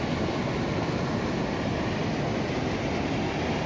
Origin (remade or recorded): recorded